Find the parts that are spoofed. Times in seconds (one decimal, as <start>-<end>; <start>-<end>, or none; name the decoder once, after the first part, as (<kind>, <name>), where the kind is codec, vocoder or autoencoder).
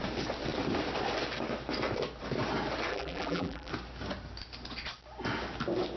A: 2.9-3.7 (vocoder, BigVGAN v2)